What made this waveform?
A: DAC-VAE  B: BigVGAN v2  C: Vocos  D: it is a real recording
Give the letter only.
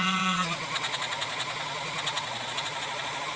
C